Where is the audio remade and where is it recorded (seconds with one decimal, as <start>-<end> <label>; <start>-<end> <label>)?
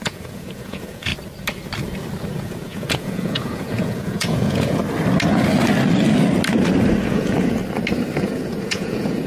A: 0.0-1.1 remade; 1.1-2.3 recorded; 2.3-4.8 remade; 4.8-7.0 recorded; 7.0-7.6 remade; 7.6-8.2 recorded; 8.2-9.3 remade